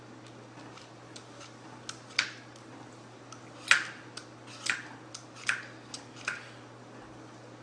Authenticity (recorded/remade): recorded